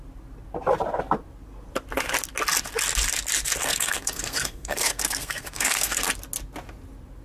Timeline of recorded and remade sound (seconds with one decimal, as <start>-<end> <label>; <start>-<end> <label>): 0.0-3.6 recorded; 3.6-6.1 remade; 6.1-7.2 recorded